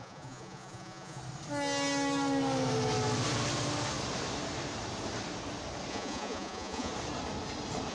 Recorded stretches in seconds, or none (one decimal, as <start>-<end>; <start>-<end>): 1.2-5.9; 6.9-7.9